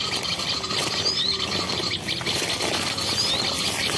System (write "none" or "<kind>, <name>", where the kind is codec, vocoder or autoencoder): none